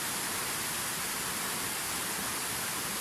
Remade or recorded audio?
remade